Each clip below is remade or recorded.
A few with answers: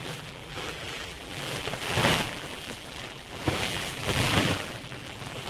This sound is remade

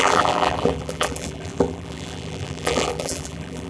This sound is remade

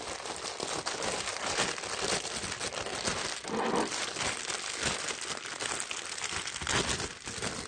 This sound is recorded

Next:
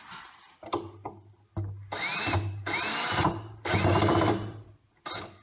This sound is recorded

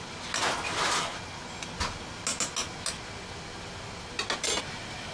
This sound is recorded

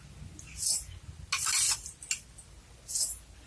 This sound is recorded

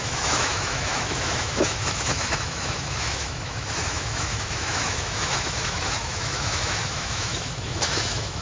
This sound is remade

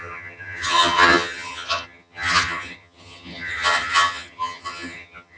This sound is remade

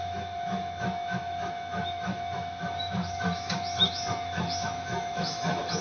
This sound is remade